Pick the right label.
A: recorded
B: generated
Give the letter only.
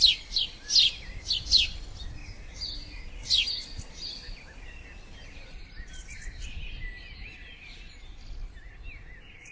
A